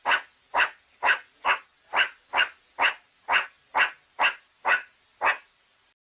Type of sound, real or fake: real